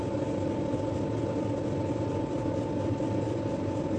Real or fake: real